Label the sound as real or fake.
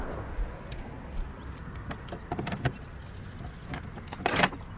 real